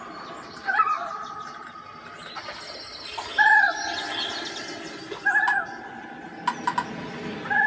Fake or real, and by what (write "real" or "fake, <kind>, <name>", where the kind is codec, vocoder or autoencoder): real